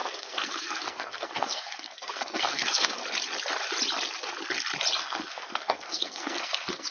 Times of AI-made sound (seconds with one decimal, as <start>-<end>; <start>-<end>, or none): 0.0-3.0; 5.0-6.9